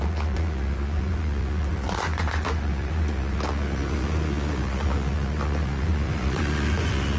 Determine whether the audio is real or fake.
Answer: fake